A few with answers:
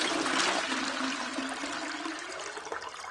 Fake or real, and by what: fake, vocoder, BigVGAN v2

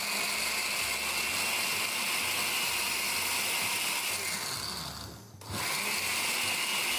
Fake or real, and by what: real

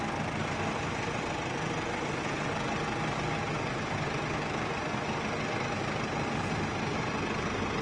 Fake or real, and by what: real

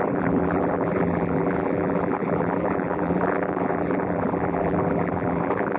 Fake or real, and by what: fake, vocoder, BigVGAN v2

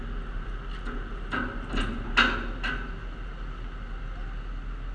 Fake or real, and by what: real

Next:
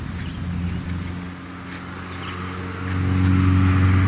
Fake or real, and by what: real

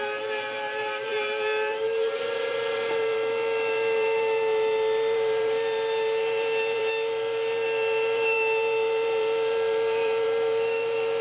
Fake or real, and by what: fake, vocoder, BigVGAN v2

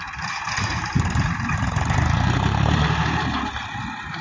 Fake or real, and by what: fake, vocoder, BigVGAN v2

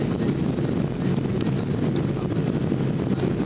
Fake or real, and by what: real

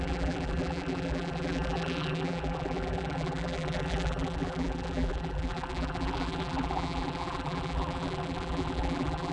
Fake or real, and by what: fake, vocoder, BigVGAN v2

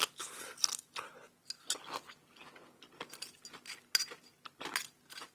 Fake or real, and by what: real